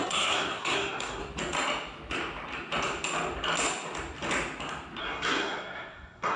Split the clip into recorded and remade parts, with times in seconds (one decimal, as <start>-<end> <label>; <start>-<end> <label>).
0.0-1.2 remade; 1.2-5.0 recorded; 5.0-6.4 remade